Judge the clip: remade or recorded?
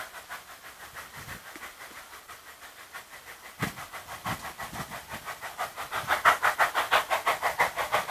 recorded